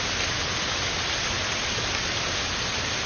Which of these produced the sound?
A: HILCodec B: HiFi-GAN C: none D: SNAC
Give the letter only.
C